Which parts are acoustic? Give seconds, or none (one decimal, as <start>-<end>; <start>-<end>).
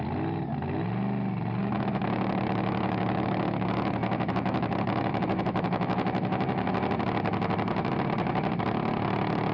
0.0-1.6; 6.7-9.5